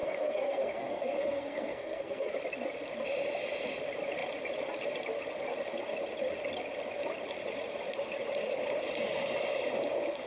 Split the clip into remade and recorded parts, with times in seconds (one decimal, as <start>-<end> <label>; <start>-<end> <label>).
0.0-2.3 remade; 2.3-10.3 recorded